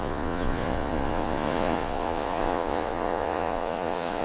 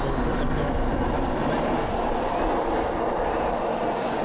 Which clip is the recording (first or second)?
second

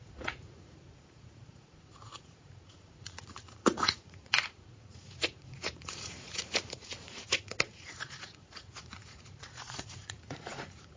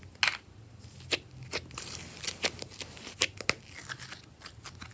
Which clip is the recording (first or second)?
second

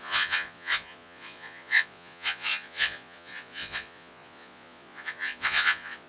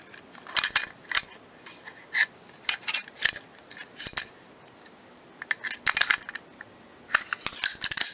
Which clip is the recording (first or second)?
second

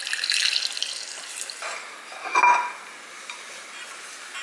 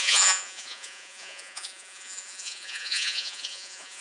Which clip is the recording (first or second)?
first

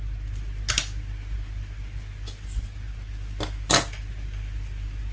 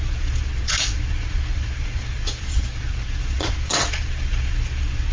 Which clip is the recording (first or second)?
first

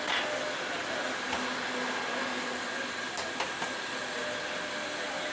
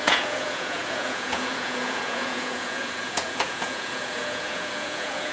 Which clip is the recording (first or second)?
first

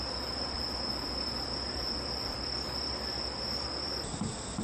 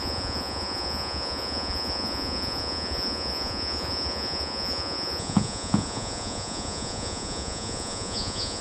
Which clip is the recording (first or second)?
first